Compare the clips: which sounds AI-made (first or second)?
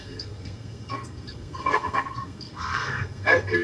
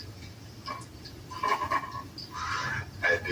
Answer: first